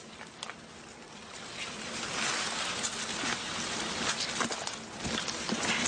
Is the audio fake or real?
real